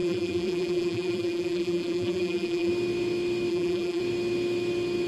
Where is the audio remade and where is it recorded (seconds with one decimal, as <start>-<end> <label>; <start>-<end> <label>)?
0.0-2.7 remade; 2.7-3.5 recorded; 3.5-4.0 remade; 4.0-5.1 recorded